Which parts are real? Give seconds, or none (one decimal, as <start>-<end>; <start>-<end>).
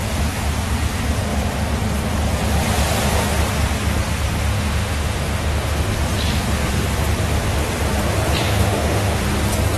0.0-4.5; 5.8-8.4; 9.2-9.8